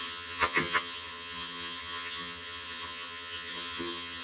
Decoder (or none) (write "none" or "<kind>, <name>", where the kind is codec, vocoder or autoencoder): vocoder, HiFi-GAN